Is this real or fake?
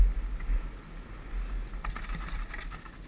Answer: real